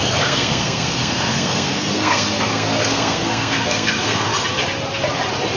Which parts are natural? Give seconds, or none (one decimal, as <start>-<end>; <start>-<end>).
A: 4.3-5.6